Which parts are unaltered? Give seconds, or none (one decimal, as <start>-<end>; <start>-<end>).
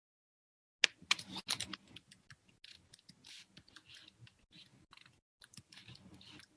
0.0-6.6